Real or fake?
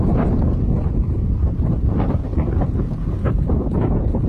fake